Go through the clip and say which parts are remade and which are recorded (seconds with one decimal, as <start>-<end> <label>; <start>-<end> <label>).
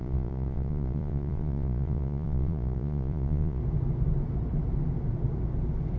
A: 0.0-3.6 remade; 3.6-6.0 recorded